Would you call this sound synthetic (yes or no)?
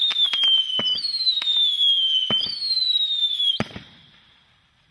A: no